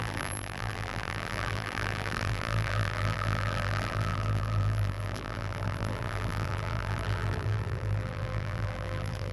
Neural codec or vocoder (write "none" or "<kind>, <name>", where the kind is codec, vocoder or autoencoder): vocoder, BigVGAN v2